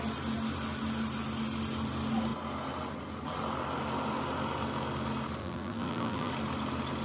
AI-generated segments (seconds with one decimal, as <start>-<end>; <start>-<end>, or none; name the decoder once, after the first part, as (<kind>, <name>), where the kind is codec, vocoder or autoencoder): 5.4-6.3 (vocoder, BigVGAN v2)